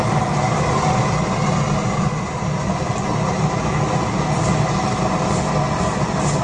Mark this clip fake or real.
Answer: real